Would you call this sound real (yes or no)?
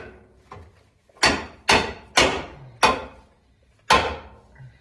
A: yes